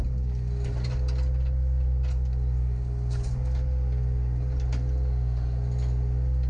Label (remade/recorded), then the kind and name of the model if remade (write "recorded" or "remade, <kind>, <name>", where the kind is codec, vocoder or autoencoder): recorded